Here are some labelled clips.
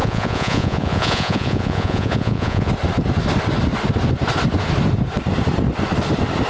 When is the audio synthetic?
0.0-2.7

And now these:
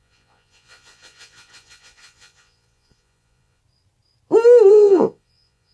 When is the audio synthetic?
0.0-3.6; 4.7-5.7